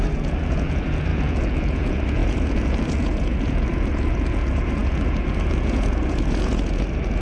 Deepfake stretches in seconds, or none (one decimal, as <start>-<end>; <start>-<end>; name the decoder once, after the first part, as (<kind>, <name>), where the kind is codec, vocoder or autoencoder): 0.0-7.2 (vocoder, Vocos)